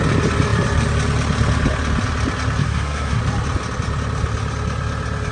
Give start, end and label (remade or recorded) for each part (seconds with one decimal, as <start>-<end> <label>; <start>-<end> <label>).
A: 0.0-2.6 recorded; 2.6-3.2 remade; 3.2-5.3 recorded